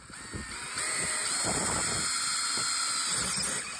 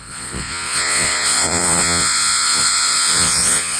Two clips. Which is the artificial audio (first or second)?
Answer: second